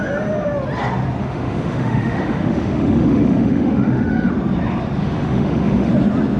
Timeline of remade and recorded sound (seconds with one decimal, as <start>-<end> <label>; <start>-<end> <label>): 0.0-1.2 recorded; 1.2-4.3 remade; 4.3-5.0 recorded; 5.0-5.9 remade; 5.9-6.4 recorded